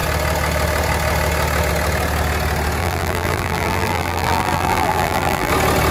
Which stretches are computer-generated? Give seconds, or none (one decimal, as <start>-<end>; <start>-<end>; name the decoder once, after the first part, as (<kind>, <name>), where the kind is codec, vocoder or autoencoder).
2.8-5.5 (vocoder, BigVGAN v2)